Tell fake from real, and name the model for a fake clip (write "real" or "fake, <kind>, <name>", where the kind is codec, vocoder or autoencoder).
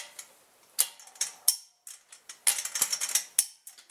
real